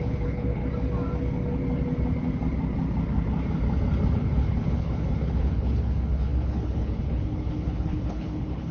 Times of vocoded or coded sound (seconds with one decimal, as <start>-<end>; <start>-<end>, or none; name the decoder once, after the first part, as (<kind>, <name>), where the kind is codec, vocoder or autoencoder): 0.0-0.6 (codec, HILCodec); 4.1-8.7